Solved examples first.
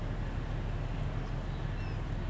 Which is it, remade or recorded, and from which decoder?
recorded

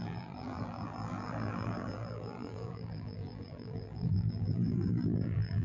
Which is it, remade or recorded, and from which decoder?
remade, vocoder, BigVGAN v2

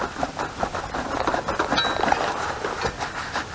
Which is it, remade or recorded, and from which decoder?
recorded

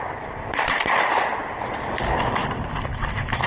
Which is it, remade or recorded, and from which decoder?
remade, vocoder, BigVGAN v2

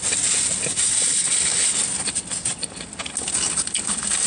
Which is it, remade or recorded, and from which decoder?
recorded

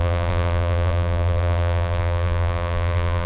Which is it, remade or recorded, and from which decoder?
remade, vocoder, BigVGAN v2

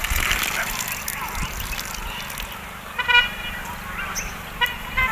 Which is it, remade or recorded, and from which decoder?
recorded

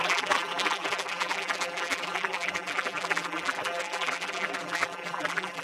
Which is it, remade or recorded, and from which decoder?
remade, vocoder, BigVGAN v2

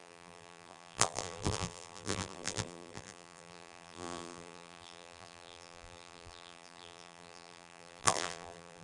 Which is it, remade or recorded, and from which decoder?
remade, vocoder, BigVGAN v2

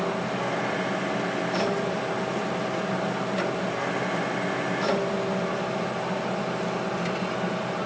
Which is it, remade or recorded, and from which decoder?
recorded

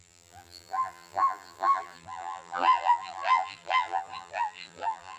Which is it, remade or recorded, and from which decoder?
remade, vocoder, BigVGAN v2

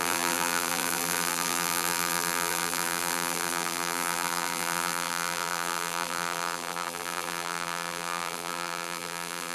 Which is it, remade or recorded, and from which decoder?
remade, vocoder, BigVGAN v2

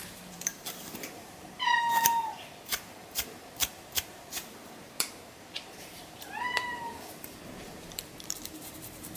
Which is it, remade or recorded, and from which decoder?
remade, vocoder, BigVGAN v2